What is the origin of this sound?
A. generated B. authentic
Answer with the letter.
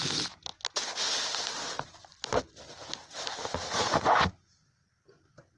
B